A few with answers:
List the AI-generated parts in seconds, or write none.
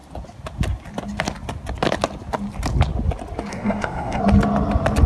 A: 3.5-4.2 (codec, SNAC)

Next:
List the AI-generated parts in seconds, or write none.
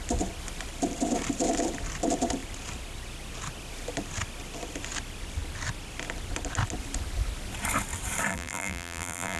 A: 8.3-9.4 (vocoder, BigVGAN v2)